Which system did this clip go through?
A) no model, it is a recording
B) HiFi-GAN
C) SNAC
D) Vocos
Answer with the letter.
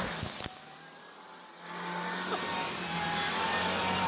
A